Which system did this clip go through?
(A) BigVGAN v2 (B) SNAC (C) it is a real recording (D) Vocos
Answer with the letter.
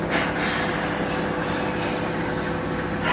C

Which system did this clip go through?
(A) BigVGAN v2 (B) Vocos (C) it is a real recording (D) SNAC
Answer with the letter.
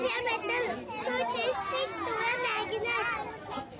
C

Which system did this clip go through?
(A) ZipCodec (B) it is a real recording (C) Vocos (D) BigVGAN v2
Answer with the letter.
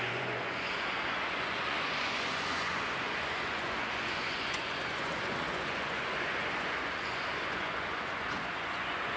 C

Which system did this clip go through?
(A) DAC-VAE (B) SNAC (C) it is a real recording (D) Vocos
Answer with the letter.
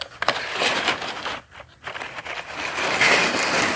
C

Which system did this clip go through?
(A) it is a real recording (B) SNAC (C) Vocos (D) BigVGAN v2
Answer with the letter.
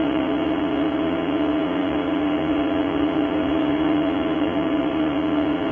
C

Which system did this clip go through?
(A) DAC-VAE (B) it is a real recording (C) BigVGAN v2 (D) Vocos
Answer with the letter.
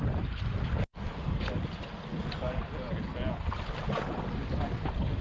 B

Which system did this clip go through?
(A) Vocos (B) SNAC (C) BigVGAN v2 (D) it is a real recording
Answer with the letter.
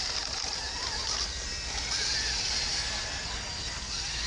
D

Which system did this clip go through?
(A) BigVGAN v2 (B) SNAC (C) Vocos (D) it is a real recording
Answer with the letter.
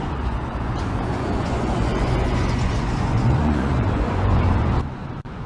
C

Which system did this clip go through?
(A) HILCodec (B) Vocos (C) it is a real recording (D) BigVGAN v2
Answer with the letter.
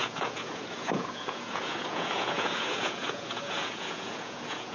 B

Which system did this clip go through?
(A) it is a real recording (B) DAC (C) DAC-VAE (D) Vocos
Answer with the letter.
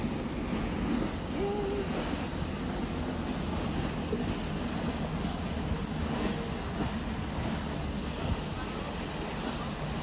A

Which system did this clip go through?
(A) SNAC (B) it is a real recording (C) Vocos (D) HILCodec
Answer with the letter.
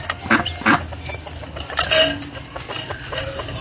B